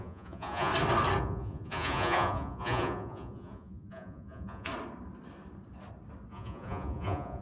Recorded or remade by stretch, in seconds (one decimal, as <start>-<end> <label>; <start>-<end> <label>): 0.0-0.7 remade; 0.7-1.2 recorded; 1.2-4.7 remade; 4.7-6.3 recorded; 6.3-7.4 remade